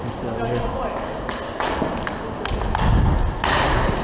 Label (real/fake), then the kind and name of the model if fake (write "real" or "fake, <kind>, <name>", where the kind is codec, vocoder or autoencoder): real